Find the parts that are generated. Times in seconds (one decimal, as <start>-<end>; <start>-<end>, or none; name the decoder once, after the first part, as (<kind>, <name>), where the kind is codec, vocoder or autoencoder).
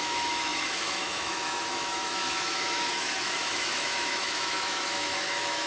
0.0-5.7 (autoencoder, DAC-VAE)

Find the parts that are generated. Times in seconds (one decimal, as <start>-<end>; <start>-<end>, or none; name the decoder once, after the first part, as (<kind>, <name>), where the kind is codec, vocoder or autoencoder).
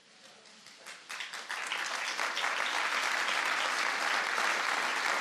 none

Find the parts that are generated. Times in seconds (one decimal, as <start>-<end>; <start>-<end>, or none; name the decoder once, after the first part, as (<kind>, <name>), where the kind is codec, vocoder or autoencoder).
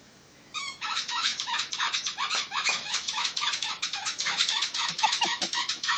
0.0-6.0 (autoencoder, DAC-VAE)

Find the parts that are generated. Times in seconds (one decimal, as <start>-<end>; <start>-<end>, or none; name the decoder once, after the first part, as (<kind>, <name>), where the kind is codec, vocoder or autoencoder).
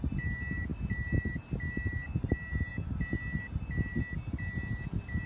none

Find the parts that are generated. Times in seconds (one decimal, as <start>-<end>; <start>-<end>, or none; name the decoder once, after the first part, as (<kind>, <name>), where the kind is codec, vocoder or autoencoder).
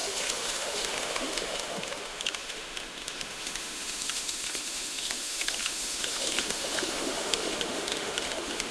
0.0-8.7 (autoencoder, DAC-VAE)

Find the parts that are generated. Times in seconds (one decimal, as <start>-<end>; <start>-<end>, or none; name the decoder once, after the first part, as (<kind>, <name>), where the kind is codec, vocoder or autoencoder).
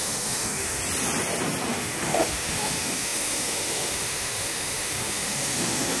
0.0-0.8 (autoencoder, DAC-VAE); 1.7-6.0